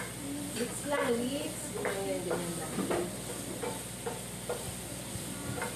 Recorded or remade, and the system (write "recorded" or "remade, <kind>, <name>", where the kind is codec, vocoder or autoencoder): recorded